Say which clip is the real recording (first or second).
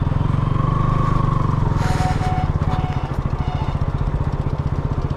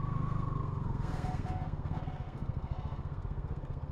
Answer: first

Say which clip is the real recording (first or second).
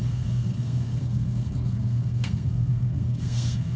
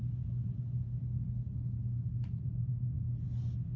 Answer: second